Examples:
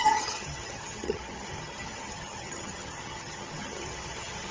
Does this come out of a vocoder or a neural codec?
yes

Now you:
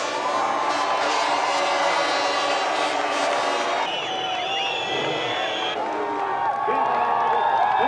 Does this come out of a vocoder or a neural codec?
no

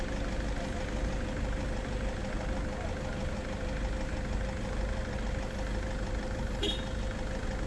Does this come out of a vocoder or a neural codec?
no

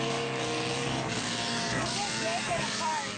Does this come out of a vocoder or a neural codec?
yes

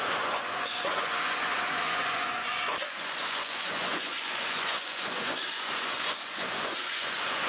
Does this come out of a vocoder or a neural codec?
yes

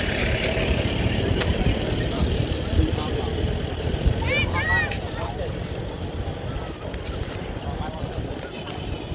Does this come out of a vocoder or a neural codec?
no